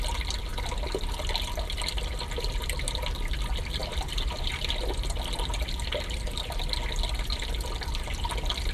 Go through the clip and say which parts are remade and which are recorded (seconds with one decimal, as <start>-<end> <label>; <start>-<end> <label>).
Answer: 0.0-3.8 recorded; 3.8-4.5 remade; 4.5-8.7 recorded